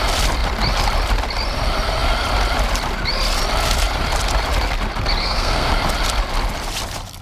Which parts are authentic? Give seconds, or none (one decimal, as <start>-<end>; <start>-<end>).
0.0-5.2; 5.7-7.2

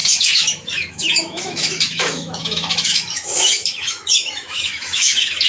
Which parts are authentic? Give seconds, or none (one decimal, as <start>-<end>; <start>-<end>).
none